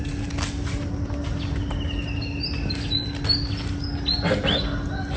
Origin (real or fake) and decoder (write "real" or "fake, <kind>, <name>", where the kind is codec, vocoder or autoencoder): real